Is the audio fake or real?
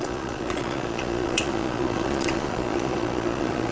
fake